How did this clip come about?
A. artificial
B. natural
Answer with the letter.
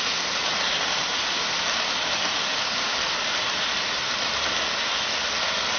B